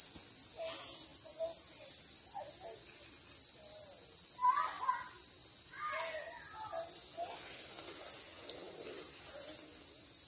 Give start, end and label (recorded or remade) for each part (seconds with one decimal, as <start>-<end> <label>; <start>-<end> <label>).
0.0-10.3 recorded